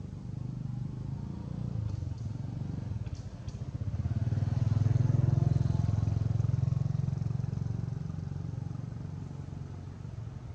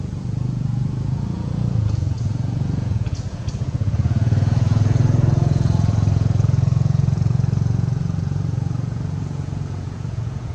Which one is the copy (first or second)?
second